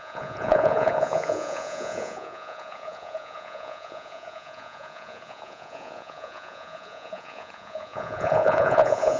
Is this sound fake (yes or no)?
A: yes